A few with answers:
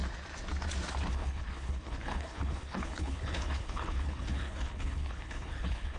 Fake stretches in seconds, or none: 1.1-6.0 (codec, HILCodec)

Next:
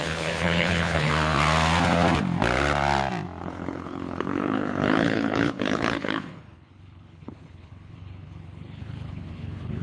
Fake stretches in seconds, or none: 0.0-1.1 (codec, HILCodec); 3.4-9.8

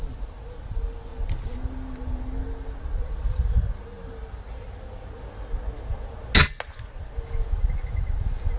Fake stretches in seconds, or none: none

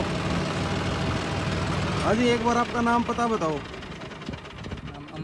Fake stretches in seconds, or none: none

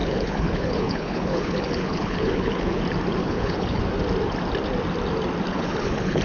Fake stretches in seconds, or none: 0.0-2.8 (codec, HILCodec); 3.2-3.8; 5.5-6.2

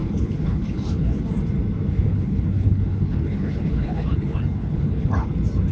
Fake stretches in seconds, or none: 0.0-1.2 (codec, HILCodec); 1.9-5.3

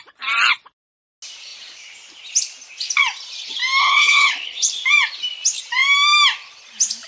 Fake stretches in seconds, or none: 3.8-4.7 (codec, HILCodec)

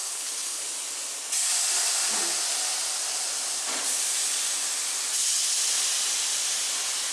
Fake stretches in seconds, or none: 0.0-0.6 (codec, HILCodec)